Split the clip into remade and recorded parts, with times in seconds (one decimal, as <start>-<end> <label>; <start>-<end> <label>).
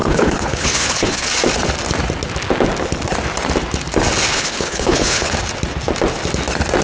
0.0-1.3 remade; 1.3-4.3 recorded; 4.3-5.3 remade; 5.3-6.8 recorded